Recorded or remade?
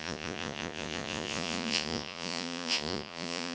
remade